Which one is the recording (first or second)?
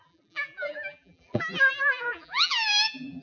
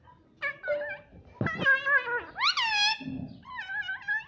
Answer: second